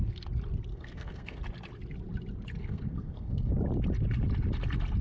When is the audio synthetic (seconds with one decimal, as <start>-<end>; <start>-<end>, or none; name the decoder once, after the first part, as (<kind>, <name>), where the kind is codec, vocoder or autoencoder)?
0.7-1.4 (codec, SNAC); 2.6-3.5